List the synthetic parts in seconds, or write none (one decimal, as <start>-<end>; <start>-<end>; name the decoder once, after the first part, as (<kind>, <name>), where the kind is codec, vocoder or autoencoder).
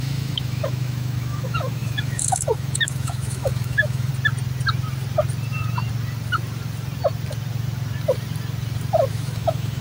0.0-4.1 (autoencoder, DAC-VAE); 9.1-9.8